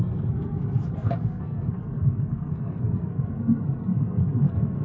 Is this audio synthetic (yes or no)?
yes